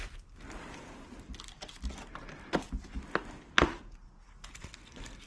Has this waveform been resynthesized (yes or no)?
no